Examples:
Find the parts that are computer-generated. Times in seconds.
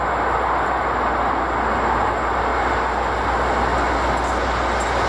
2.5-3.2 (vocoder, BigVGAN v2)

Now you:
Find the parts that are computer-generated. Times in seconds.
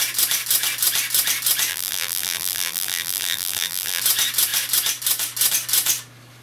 1.7-4.0 (vocoder, BigVGAN v2)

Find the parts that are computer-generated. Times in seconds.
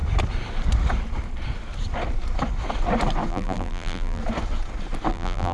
3.3-4.2 (vocoder, BigVGAN v2); 5.1-5.5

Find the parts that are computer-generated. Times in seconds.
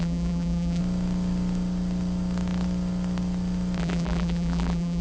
0.0-0.8 (vocoder, BigVGAN v2); 3.8-5.0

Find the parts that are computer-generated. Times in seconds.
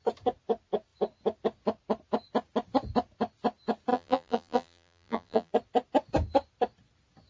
3.9-5.5 (vocoder, BigVGAN v2)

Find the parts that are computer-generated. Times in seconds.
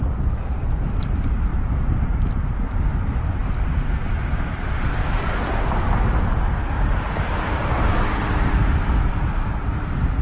1.5-2.2 (vocoder, BigVGAN v2); 8.6-9.7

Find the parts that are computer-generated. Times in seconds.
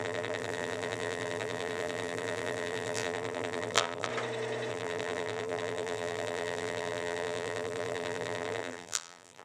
0.0-4.1 (vocoder, BigVGAN v2); 4.7-9.4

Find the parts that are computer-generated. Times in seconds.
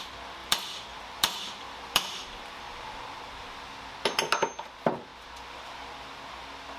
0.4-3.9 (vocoder, BigVGAN v2)